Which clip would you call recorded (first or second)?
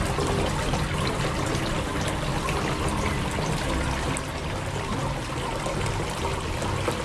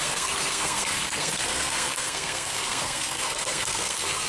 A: first